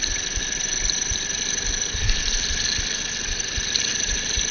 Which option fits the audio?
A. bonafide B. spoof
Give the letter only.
A